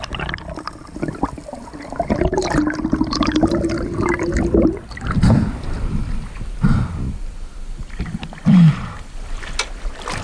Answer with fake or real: real